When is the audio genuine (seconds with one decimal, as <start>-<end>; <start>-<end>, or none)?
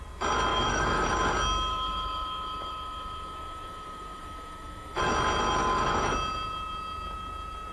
0.0-0.5; 1.1-1.7; 5.0-5.6; 6.1-7.7